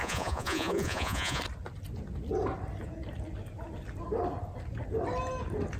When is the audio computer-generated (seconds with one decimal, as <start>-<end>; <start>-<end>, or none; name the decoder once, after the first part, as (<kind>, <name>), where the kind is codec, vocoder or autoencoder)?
0.0-1.4 (vocoder, Vocos)

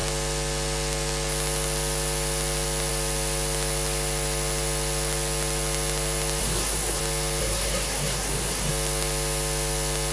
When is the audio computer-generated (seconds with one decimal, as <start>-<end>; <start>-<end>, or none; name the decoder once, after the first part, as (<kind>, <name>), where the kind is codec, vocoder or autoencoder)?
6.4-7.0 (codec, SNAC); 7.4-8.7

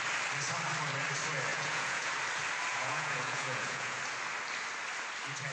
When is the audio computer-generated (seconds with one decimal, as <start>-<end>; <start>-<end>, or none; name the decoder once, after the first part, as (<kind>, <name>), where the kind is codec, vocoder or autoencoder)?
1.5-2.1 (vocoder, Vocos); 2.7-4.0

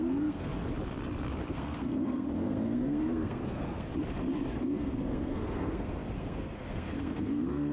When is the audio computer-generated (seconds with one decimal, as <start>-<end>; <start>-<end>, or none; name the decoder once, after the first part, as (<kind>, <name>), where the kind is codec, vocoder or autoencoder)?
0.0-0.5 (codec, SNAC); 1.5-3.9; 4.6-7.7